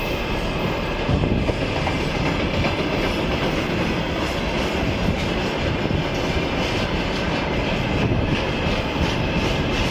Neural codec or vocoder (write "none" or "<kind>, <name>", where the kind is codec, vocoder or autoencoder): none